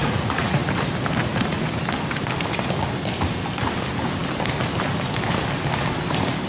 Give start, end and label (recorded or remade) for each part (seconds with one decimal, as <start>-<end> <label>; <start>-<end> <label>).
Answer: 0.0-0.7 remade; 0.7-1.3 recorded; 1.3-1.8 remade; 1.8-6.5 recorded